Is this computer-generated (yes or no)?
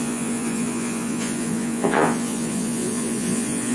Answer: yes